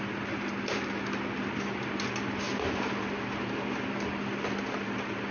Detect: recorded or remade recorded